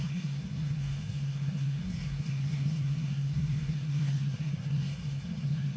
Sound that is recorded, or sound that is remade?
remade